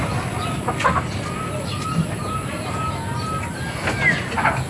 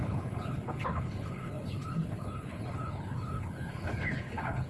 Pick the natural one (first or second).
first